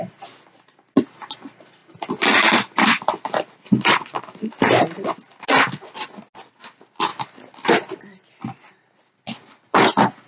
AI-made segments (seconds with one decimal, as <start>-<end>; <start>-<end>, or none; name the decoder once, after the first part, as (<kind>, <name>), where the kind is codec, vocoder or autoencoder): 1.8-4.0 (vocoder, BigVGAN v2); 7.1-7.7